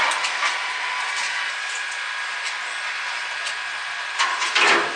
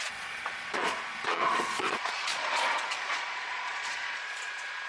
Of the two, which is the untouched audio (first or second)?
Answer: first